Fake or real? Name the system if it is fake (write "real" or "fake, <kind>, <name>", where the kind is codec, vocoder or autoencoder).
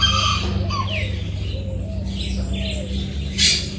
real